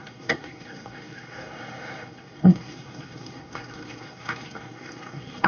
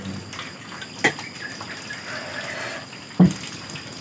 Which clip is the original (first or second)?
second